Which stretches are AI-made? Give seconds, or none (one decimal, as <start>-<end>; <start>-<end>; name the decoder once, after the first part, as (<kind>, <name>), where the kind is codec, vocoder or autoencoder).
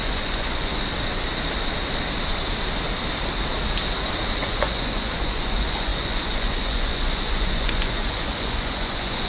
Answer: 0.0-0.7 (vocoder, Vocos); 4.4-9.3